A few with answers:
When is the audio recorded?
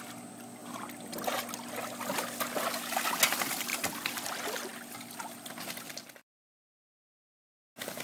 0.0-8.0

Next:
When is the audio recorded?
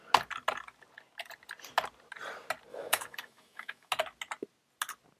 0.0-2.7; 3.9-5.2